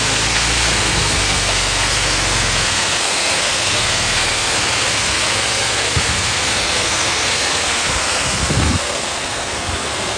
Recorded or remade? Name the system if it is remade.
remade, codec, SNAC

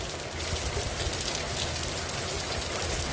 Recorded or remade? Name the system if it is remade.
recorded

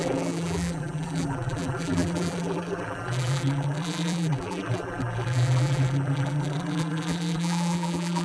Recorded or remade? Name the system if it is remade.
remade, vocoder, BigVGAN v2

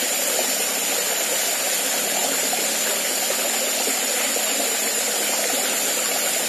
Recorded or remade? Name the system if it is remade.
recorded